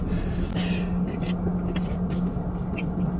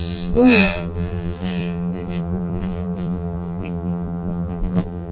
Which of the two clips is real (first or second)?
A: first